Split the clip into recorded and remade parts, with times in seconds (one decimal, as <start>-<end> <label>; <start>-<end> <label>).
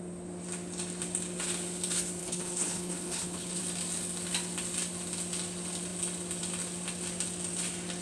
0.0-2.2 recorded; 2.2-3.6 remade; 3.6-8.0 recorded